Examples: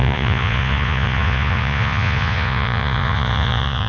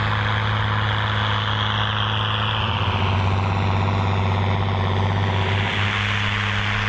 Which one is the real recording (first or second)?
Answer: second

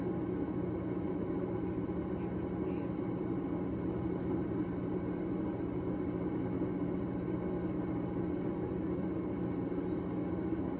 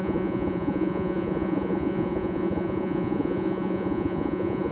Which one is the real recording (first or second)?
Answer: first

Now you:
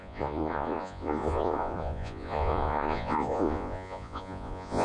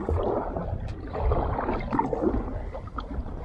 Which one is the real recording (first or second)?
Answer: second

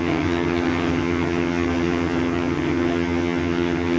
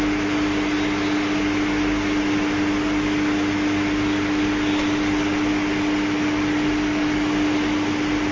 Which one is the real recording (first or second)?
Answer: second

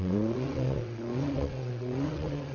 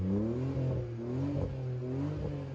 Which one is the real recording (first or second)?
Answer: second